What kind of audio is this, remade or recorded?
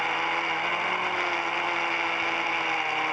recorded